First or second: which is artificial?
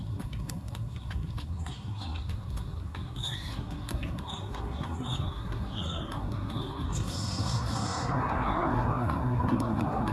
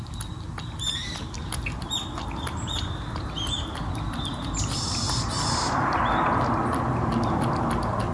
first